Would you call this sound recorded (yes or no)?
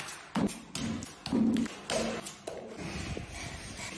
yes